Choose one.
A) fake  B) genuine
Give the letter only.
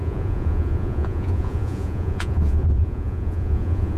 A